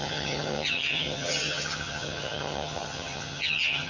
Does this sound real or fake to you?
fake